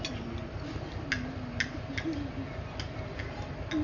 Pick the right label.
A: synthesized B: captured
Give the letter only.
B